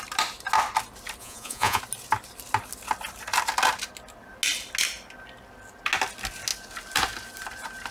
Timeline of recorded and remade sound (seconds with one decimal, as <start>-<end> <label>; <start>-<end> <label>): 0.0-1.2 recorded; 1.2-1.8 remade; 1.8-7.9 recorded